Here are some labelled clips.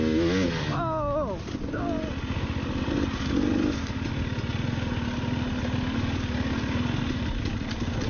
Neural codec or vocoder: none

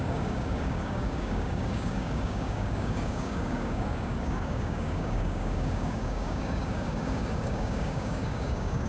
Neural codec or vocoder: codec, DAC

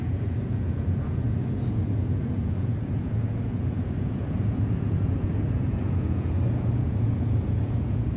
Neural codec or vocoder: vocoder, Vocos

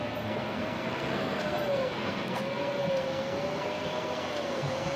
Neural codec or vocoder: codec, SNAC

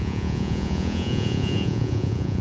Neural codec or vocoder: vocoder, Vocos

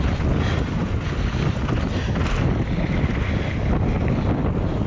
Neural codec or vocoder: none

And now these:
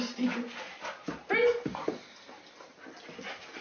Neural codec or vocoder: none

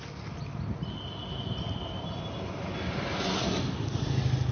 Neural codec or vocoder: none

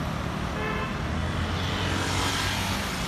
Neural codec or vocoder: none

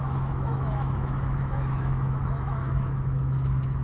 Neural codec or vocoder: autoencoder, DAC-VAE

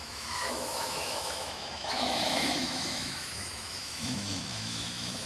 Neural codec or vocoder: autoencoder, DAC-VAE